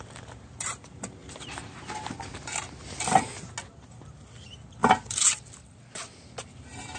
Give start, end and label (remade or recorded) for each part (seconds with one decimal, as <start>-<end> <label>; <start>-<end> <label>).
0.0-4.8 recorded; 4.8-5.6 remade; 5.6-7.0 recorded